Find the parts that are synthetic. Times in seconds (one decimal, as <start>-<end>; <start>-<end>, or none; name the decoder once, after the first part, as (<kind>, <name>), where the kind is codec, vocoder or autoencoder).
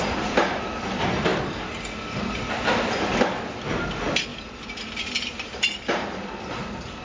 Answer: none